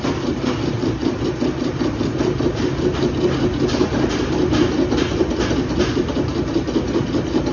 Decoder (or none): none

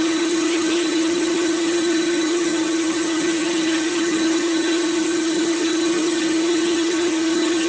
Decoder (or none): vocoder, HiFi-GAN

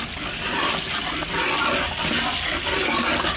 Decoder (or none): none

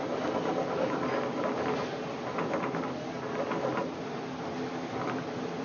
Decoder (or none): none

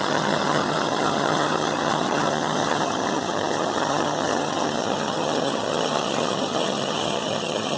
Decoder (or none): vocoder, HiFi-GAN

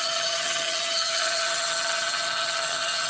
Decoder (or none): vocoder, HiFi-GAN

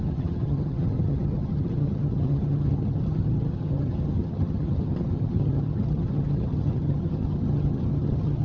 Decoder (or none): vocoder, HiFi-GAN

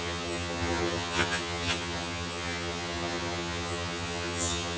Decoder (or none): vocoder, HiFi-GAN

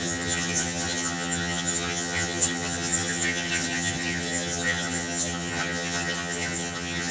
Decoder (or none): vocoder, HiFi-GAN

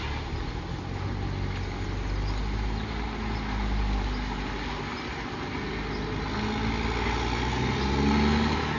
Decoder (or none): none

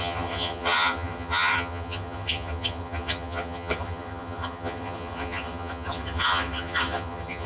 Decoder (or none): vocoder, HiFi-GAN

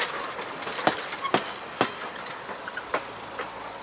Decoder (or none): none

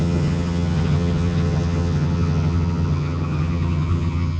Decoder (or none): vocoder, HiFi-GAN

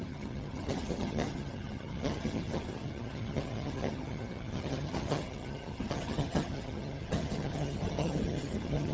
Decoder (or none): vocoder, HiFi-GAN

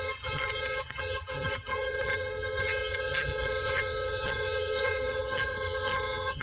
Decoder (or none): vocoder, HiFi-GAN